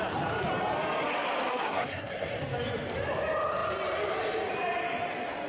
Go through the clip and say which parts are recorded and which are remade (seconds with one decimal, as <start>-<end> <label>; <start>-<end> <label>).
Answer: 0.0-1.5 recorded; 1.5-2.4 remade; 2.4-5.5 recorded